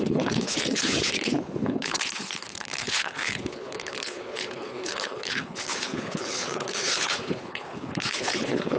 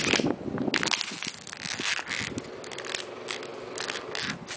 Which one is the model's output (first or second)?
first